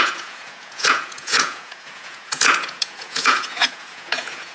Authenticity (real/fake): fake